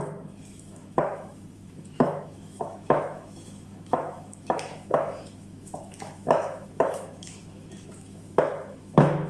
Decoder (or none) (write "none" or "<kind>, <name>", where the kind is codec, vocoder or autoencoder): autoencoder, DAC-VAE